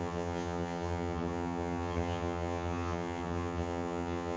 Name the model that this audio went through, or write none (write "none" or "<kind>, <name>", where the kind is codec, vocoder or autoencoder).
vocoder, HiFi-GAN